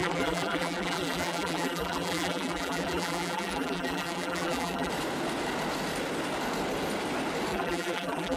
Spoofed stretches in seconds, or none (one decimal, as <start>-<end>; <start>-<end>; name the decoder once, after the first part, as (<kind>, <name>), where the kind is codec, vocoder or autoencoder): 0.0-4.9 (vocoder, BigVGAN v2); 7.5-8.4